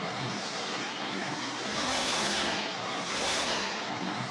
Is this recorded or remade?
remade